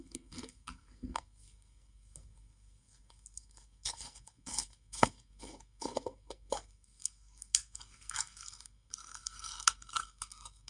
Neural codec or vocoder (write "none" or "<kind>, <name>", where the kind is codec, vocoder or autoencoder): codec, SNAC